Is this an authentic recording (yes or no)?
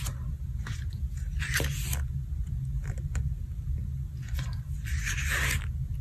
yes